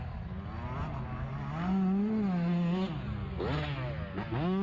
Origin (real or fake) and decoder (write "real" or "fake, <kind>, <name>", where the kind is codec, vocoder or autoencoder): real